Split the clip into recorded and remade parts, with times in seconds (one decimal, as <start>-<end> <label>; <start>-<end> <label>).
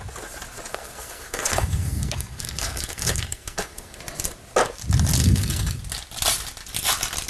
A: 0.0-0.7 recorded; 0.7-4.0 remade; 4.0-5.2 recorded; 5.2-5.8 remade; 5.8-7.3 recorded